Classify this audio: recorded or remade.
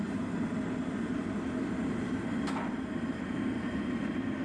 recorded